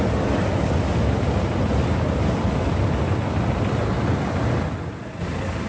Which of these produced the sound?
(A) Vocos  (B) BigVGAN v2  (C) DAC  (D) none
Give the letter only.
D